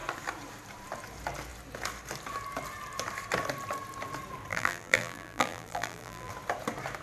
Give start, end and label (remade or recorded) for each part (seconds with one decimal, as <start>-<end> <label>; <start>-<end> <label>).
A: 0.0-4.5 recorded; 4.5-6.3 remade; 6.3-7.0 recorded